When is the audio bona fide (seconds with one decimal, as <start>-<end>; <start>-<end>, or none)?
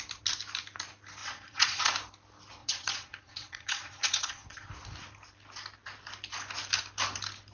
0.0-1.2; 1.9-2.6; 4.7-7.5